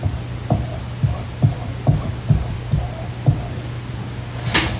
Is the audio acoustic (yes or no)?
yes